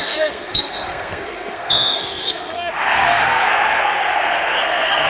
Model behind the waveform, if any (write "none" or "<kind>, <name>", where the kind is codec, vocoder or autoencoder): codec, SNAC